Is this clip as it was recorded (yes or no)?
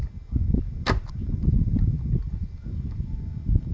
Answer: yes